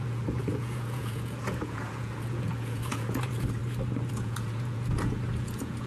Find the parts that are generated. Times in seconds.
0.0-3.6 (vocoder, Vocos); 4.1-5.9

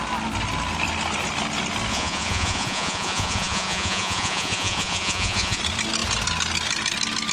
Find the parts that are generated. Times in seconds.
1.9-5.6 (vocoder, Vocos)

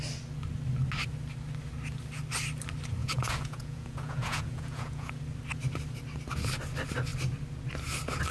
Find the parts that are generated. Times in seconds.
3.0-5.2 (vocoder, Vocos)

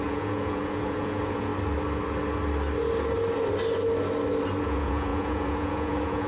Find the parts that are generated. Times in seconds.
0.0-1.5 (vocoder, Vocos); 4.6-6.3

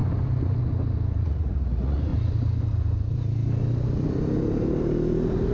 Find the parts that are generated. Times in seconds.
1.2-2.1 (vocoder, Vocos)

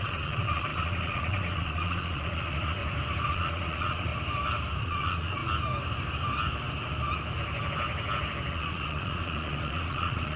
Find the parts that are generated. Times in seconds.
0.0-2.8 (vocoder, Vocos); 3.3-4.1; 4.8-5.4; 8.5-10.4

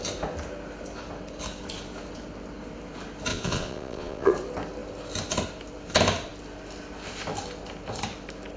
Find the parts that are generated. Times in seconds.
3.3-4.3 (vocoder, Vocos)

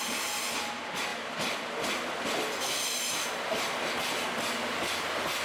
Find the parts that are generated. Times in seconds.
none